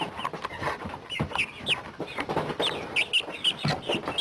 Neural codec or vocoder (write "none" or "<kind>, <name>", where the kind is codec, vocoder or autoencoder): none